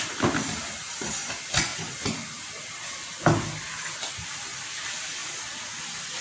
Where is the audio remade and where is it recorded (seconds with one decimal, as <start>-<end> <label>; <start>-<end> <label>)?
0.0-6.2 recorded